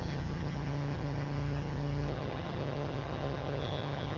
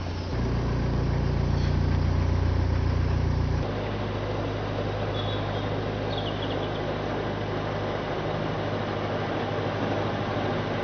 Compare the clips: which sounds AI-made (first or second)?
first